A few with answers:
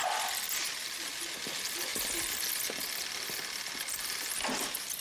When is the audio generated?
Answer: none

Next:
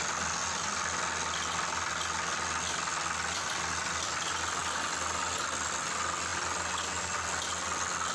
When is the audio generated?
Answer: none

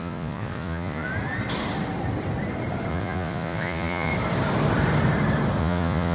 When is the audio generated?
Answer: 0.0-1.1 (vocoder, Vocos); 2.9-4.1; 5.6-6.1

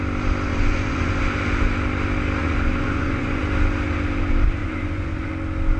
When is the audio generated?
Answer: 0.5-1.2 (vocoder, Vocos); 2.4-3.4; 4.6-5.3

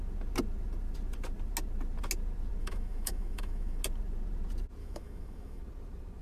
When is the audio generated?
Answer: 2.6-3.8 (autoencoder, DAC-VAE); 4.8-5.6

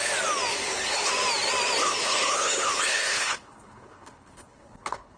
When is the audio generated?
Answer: 0.5-1.1 (codec, HILCodec); 1.8-5.2

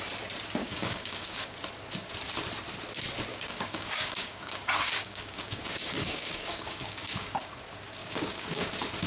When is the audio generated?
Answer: 0.6-1.6 (codec, DAC); 3.3-7.5; 8.0-8.7